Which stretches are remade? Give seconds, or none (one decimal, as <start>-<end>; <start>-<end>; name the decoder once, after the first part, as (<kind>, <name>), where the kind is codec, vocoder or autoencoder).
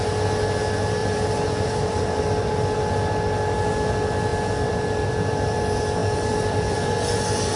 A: 1.0-2.5 (vocoder, BigVGAN v2); 4.3-5.6; 6.0-6.9